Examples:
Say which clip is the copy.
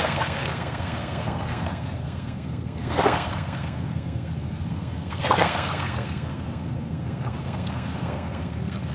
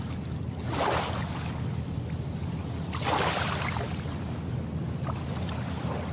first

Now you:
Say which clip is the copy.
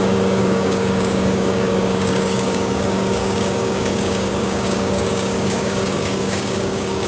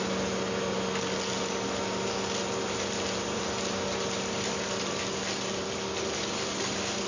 first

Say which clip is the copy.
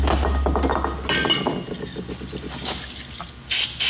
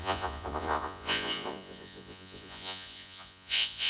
second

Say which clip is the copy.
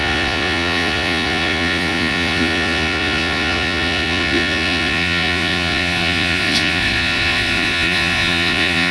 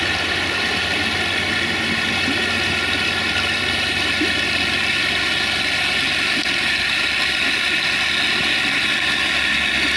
first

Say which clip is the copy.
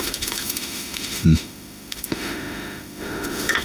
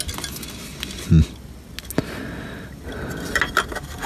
first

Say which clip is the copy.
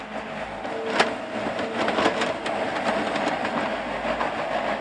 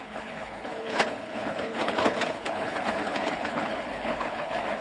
second